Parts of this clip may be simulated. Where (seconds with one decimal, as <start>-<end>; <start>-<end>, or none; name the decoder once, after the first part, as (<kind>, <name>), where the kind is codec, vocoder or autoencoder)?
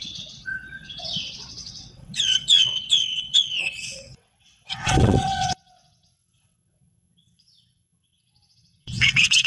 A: 0.0-9.5 (vocoder, WaveNeXt)